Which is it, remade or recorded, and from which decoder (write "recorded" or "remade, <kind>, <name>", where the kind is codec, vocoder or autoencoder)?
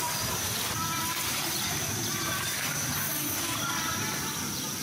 recorded